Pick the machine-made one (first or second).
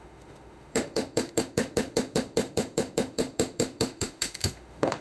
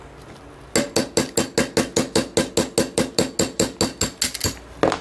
first